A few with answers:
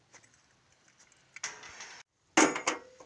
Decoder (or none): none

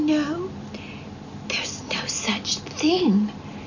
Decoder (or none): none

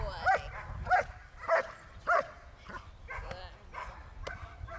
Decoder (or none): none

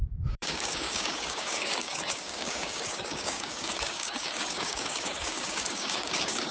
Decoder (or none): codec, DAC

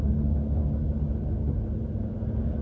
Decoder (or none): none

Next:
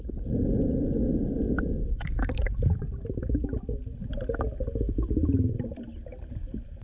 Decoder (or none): none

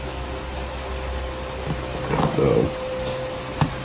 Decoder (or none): none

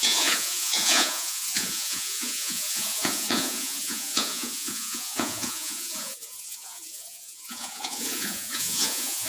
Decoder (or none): vocoder, Vocos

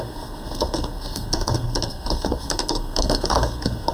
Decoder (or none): codec, SNAC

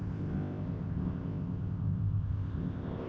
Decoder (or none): codec, ZipCodec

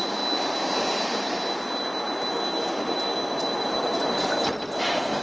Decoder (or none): none